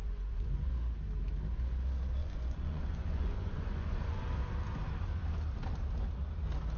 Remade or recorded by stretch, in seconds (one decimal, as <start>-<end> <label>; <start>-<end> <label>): 0.0-0.7 remade; 0.7-2.2 recorded; 2.2-4.2 remade; 4.2-6.8 recorded